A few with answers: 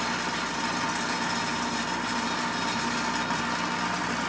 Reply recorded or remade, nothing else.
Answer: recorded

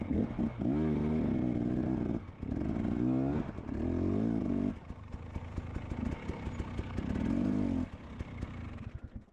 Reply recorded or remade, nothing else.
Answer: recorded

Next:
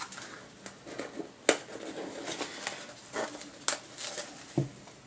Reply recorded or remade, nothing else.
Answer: recorded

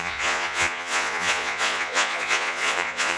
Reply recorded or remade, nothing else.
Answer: remade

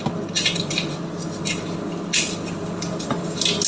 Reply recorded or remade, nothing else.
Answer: recorded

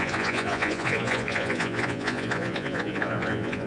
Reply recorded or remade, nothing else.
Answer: remade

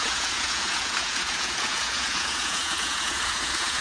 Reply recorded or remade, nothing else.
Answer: remade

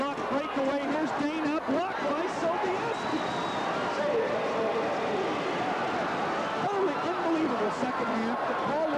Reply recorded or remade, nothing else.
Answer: recorded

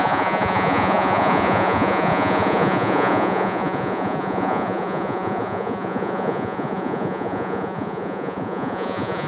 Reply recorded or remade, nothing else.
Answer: remade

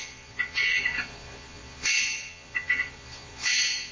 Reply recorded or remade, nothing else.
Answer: remade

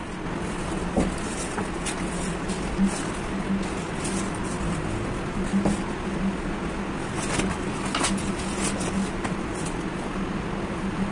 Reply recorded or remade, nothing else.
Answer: recorded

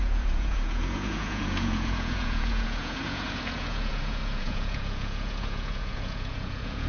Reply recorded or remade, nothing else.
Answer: remade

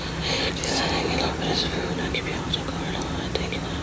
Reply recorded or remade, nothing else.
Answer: recorded